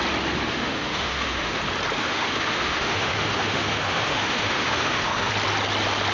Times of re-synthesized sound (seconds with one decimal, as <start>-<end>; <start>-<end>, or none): 0.5-1.6; 2.0-5.3